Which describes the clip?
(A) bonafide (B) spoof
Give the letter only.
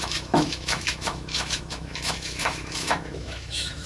B